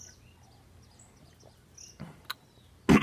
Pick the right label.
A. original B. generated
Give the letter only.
A